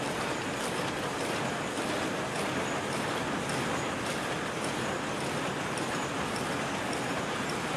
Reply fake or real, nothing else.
real